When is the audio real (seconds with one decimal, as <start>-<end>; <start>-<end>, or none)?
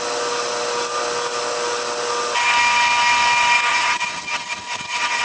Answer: 0.0-3.7